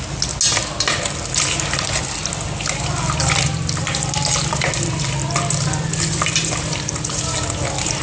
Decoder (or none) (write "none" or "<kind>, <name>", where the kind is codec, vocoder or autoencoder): none